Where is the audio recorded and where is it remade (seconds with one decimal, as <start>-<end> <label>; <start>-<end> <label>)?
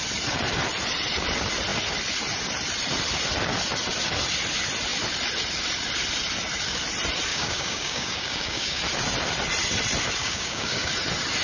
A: 0.0-7.3 recorded; 7.3-8.8 remade; 8.8-10.2 recorded; 10.2-10.9 remade; 10.9-11.4 recorded